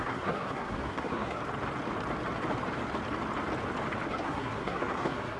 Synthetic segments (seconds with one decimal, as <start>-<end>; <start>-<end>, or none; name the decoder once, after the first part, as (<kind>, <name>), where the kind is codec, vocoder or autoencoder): 0.0-1.4 (codec, SNAC); 4.1-5.4

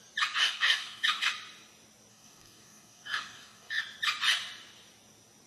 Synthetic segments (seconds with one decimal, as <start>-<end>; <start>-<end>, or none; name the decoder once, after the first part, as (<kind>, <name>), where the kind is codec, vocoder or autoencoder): 0.4-1.3 (codec, DAC); 2.1-3.8

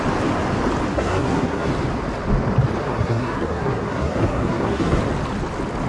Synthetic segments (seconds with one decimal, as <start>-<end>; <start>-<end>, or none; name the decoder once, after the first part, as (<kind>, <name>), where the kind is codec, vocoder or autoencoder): 0.9-1.7 (codec, SNAC); 2.8-5.0

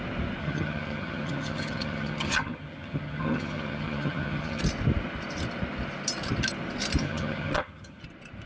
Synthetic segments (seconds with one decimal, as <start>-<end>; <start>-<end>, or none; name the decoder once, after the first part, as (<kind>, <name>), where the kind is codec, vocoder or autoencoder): 0.4-4.6 (vocoder, HiFi-GAN); 7.0-8.0

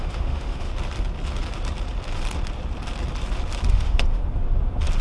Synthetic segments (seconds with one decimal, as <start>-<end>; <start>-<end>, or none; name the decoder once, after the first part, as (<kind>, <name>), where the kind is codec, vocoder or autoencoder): 0.0-0.7 (autoencoder, DAC-VAE); 3.7-4.2

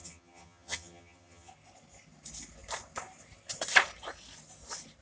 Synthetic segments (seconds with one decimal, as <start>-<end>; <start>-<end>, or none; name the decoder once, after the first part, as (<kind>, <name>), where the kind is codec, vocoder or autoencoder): 0.0-1.5 (vocoder, HiFi-GAN)

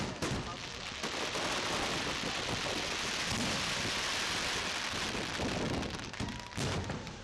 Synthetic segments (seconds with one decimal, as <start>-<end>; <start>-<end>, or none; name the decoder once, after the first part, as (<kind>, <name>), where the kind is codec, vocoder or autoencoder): none

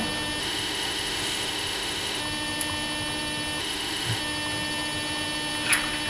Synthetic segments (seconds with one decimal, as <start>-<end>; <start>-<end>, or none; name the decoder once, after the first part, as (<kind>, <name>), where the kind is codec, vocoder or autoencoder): 0.4-2.2 (autoencoder, DAC-VAE); 3.6-4.2